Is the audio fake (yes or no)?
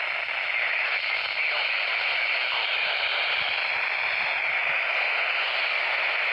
no